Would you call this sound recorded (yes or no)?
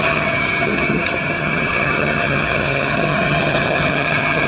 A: no